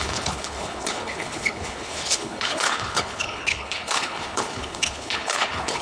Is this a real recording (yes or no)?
no